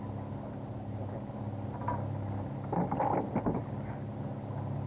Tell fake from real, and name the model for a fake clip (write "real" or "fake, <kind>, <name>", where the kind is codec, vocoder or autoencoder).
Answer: real